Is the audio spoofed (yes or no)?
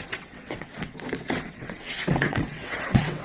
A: yes